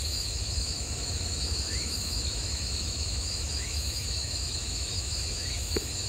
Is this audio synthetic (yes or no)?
yes